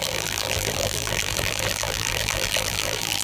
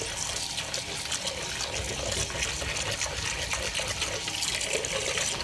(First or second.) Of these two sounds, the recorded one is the second